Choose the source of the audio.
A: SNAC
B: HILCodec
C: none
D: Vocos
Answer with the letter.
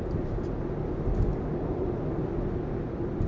C